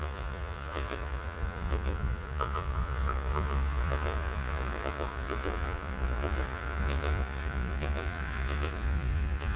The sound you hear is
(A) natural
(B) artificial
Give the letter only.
B